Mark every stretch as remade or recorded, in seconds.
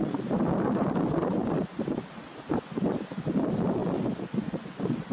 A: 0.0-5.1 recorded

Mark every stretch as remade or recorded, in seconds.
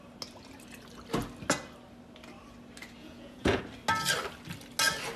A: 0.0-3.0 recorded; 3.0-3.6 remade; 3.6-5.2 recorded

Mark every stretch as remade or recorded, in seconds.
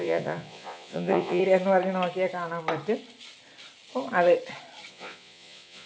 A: 0.0-1.4 remade; 1.4-4.9 recorded; 4.9-5.9 remade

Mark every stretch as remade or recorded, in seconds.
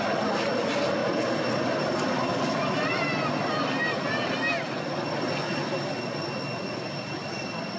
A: 0.0-7.8 recorded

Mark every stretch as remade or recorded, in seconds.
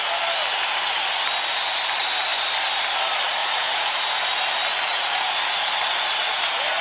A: 0.0-3.4 recorded; 3.4-4.1 remade; 4.1-6.8 recorded